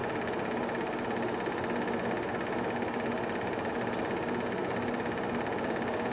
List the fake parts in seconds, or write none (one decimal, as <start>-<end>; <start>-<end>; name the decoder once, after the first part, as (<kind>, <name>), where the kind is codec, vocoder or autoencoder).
none